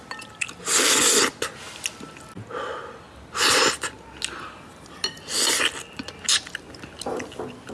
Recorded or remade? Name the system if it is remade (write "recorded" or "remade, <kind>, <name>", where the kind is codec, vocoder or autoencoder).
recorded